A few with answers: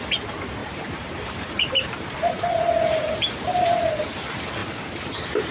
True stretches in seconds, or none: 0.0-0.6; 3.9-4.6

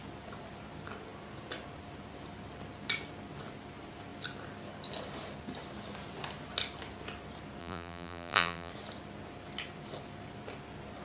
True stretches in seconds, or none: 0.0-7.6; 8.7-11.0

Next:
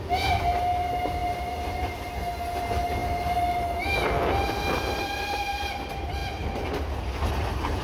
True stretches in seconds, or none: 0.0-7.8

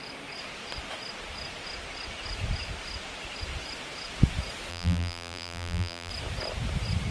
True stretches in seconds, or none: 0.0-4.7; 6.1-7.1

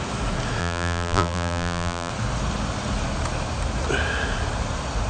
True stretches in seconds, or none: 0.0-0.6; 2.1-5.1

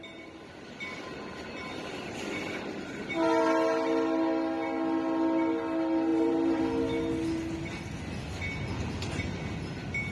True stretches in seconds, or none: 0.0-6.1; 6.6-10.1

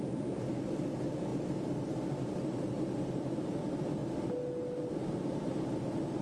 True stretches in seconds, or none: 1.3-1.8; 4.0-4.9

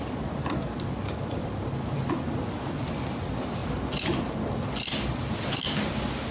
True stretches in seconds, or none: 0.0-1.4; 2.1-6.3